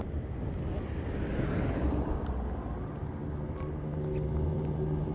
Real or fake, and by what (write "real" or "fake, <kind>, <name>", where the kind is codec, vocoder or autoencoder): real